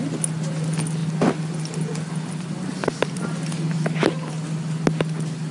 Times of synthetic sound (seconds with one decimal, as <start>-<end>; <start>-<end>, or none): none

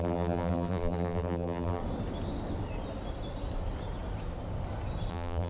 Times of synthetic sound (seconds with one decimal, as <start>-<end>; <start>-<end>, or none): 0.0-1.8; 5.1-5.5

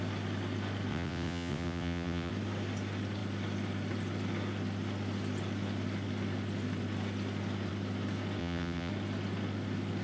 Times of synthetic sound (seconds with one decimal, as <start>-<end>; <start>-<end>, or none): 0.9-2.3; 8.4-8.9

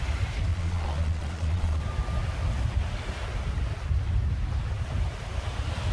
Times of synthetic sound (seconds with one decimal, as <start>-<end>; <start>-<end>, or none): 0.5-1.8

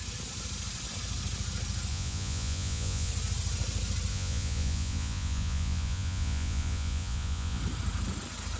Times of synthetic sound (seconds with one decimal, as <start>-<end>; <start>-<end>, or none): 1.9-3.1; 4.1-7.6